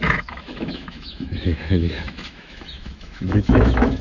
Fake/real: fake